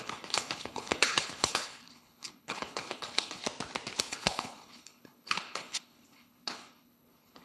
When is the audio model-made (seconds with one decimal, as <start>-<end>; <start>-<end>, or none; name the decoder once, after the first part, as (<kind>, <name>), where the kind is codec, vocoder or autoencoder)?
0.0-3.4 (codec, HILCodec); 4.1-7.4